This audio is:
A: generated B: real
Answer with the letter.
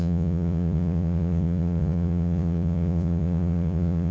A